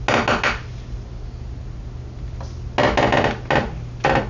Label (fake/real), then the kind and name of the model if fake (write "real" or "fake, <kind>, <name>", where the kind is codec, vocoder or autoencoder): real